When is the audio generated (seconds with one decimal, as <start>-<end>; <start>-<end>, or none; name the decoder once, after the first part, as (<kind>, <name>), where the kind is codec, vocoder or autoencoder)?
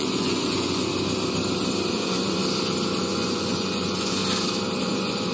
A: 0.0-0.9 (vocoder, Vocos); 1.9-2.4; 3.0-4.2; 4.8-5.3